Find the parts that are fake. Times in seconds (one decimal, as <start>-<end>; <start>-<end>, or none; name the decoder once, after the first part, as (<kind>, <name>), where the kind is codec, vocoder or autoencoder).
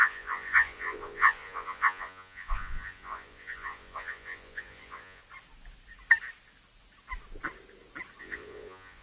0.0-5.2 (vocoder, Vocos); 8.2-9.0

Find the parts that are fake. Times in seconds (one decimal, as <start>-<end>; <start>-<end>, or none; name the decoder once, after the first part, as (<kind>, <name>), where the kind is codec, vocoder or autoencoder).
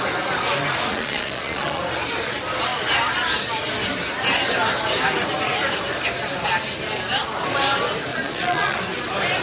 0.9-1.8 (vocoder, Vocos); 8.1-8.8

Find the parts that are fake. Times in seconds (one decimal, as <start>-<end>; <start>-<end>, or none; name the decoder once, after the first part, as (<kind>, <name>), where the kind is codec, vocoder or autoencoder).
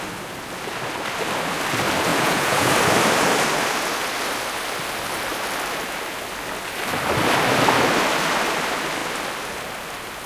2.1-2.7 (vocoder, Vocos)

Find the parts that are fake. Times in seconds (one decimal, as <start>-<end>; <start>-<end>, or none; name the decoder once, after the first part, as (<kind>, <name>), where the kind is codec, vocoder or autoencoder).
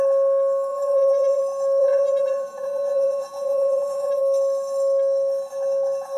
0.7-1.4 (vocoder, Vocos); 1.8-4.2